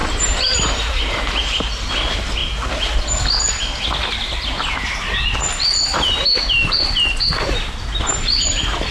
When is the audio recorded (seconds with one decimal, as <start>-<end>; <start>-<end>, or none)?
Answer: 1.9-5.9; 6.9-8.9